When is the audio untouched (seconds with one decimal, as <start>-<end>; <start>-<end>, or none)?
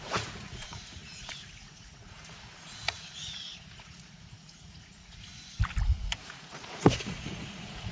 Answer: 5.3-6.0